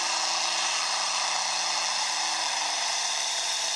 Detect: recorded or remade remade